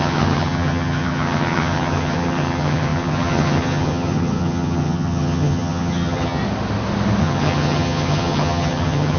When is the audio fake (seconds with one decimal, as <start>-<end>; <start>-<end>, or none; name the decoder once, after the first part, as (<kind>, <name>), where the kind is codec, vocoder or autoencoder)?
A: 0.0-6.4 (vocoder, HiFi-GAN); 7.2-9.2